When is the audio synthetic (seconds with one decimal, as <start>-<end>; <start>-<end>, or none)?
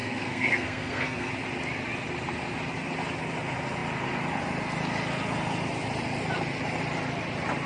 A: 0.0-1.3